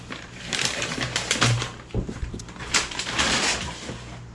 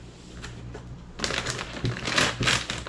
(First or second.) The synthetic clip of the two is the first